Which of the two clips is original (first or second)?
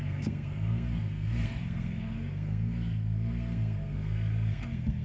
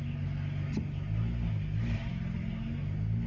second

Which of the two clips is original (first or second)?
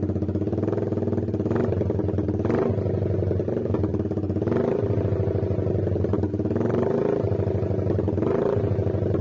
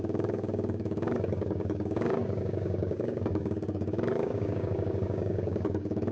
first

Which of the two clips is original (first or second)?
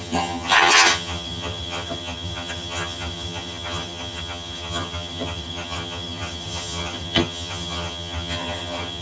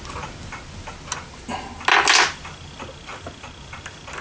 second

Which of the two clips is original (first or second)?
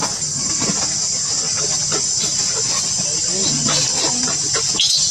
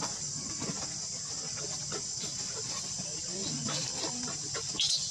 first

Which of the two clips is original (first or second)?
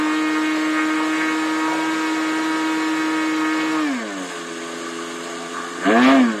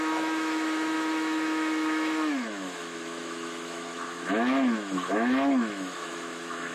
first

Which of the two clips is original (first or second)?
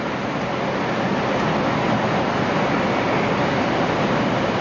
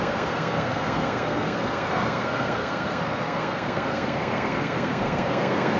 first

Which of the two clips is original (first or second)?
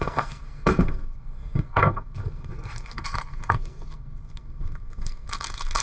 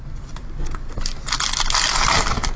second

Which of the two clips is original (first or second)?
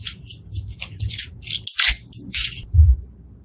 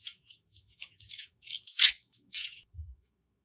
first